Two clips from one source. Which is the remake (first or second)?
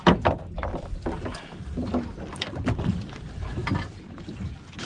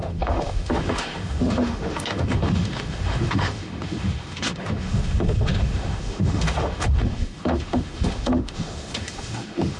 second